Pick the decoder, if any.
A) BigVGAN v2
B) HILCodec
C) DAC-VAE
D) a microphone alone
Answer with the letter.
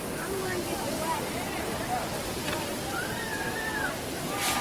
D